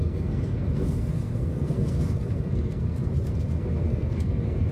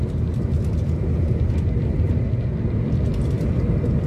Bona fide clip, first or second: second